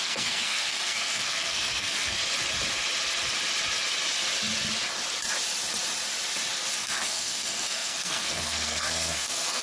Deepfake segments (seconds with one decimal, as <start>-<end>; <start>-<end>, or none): 0.0-2.2; 6.8-9.6